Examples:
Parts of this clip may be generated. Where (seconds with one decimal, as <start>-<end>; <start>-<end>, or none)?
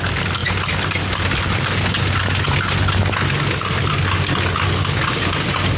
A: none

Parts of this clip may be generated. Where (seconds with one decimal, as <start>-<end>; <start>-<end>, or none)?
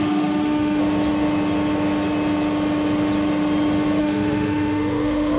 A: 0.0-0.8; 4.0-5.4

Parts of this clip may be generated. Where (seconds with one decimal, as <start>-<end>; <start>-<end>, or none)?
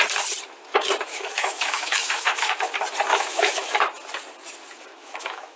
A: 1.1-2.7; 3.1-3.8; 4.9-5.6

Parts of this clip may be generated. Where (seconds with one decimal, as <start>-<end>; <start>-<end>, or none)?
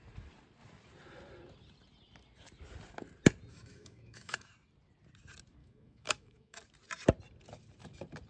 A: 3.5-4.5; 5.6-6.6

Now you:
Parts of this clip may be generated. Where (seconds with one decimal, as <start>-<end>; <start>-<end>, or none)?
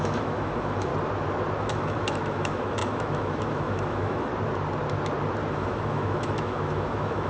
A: 0.0-0.9; 1.6-4.3; 5.5-7.3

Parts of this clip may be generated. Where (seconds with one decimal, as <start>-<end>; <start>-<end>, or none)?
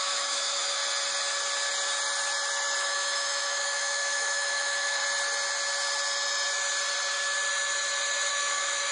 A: 0.0-0.8; 2.8-5.0; 8.3-8.9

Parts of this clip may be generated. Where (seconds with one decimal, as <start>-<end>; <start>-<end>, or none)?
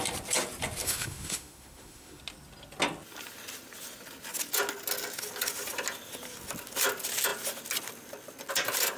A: 0.8-2.2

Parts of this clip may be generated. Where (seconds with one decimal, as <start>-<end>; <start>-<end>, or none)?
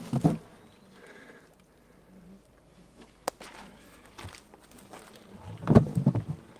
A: 2.7-3.3